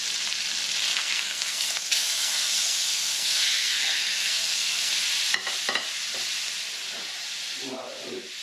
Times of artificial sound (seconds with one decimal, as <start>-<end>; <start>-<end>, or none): 0.9-4.9